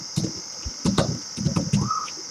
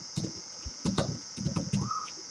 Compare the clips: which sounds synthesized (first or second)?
second